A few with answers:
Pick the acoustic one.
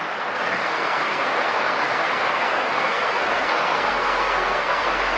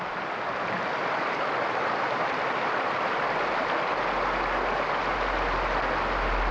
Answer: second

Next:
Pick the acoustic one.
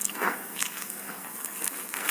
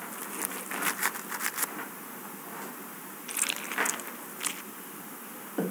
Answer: second